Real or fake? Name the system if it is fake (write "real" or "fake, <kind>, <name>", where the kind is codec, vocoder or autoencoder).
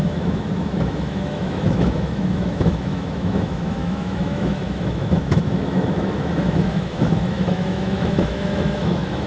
fake, autoencoder, DAC-VAE